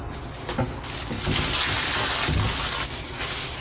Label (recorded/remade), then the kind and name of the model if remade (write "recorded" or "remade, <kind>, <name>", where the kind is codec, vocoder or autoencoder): recorded